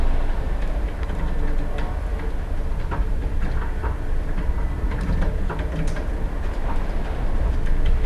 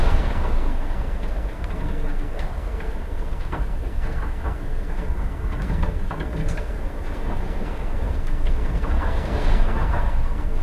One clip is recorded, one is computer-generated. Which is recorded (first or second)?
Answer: first